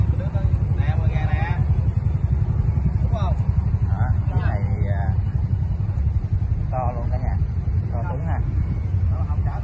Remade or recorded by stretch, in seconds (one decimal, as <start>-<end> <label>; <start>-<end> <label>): 0.0-9.6 recorded